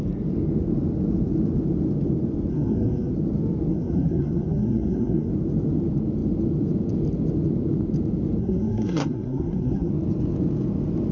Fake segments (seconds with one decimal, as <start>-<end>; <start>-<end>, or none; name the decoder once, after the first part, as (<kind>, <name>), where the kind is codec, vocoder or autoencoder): 2.5-3.1 (codec, SNAC); 3.7-5.3; 8.4-9.9